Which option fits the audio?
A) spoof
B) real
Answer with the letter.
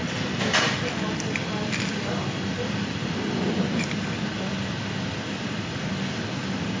B